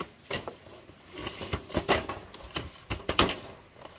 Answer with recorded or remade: recorded